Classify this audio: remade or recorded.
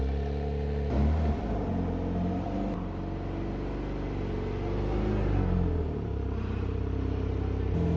recorded